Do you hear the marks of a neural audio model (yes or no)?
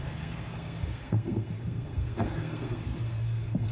yes